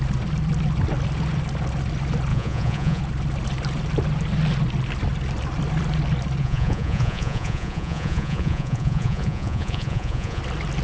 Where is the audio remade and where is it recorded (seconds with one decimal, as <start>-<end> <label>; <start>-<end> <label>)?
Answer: 0.0-2.3 recorded; 2.3-3.0 remade; 3.0-6.4 recorded; 6.4-10.4 remade; 10.4-10.8 recorded